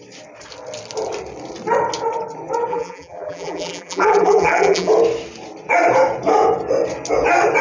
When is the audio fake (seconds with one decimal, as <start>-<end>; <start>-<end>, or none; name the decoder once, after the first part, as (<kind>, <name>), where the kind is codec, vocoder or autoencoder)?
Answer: 2.7-4.9 (vocoder, BigVGAN v2)